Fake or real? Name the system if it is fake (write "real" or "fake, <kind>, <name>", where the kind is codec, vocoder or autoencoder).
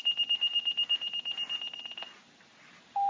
real